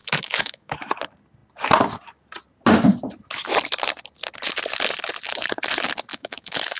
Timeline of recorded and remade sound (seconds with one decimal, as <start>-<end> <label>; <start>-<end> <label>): 0.0-0.9 remade; 0.9-6.1 recorded; 6.1-6.8 remade